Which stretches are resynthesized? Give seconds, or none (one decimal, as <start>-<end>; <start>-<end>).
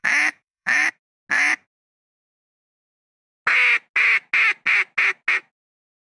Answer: 0.0-0.9